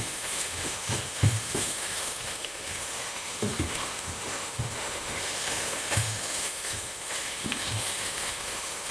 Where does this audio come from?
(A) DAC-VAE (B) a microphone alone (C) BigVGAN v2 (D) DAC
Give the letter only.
A